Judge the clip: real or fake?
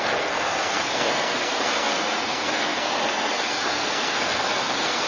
fake